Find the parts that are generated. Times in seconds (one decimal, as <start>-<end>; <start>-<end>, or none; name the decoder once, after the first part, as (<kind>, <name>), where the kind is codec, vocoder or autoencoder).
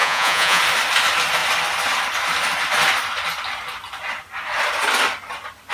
0.0-0.6 (vocoder, Vocos)